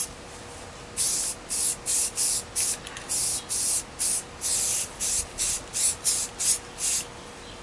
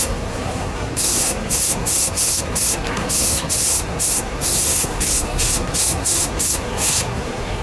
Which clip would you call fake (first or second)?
second